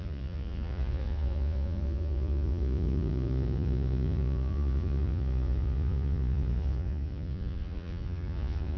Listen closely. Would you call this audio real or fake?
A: fake